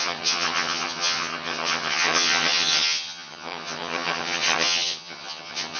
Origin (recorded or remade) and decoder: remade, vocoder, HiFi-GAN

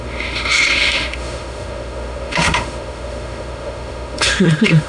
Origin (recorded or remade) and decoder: remade, autoencoder, DAC-VAE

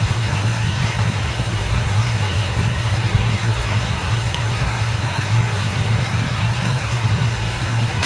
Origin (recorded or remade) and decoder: remade, codec, SNAC